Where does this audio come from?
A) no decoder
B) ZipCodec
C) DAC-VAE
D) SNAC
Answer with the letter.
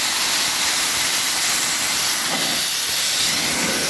A